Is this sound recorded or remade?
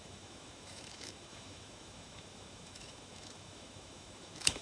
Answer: remade